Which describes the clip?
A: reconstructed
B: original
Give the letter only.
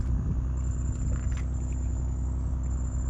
B